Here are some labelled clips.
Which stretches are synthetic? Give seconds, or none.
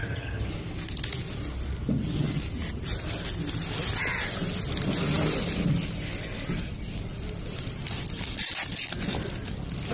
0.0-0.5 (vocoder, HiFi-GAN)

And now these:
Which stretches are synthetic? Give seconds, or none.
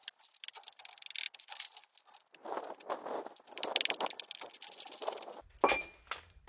none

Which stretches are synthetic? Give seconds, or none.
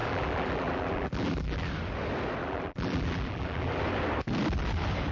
0.0-1.7 (vocoder, BigVGAN v2); 2.4-3.8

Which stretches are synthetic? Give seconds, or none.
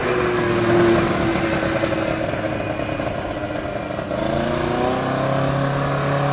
none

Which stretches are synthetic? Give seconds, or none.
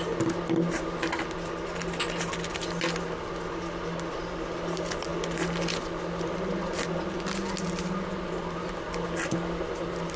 none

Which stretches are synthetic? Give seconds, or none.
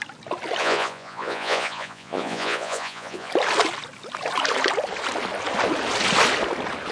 0.6-3.3 (vocoder, Vocos)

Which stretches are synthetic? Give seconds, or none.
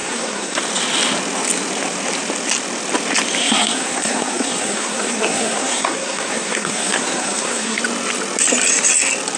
0.0-0.6 (codec, SNAC); 3.4-7.8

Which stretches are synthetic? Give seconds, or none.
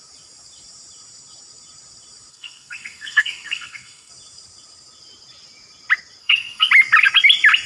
2.3-4.1 (codec, SNAC); 6.2-6.7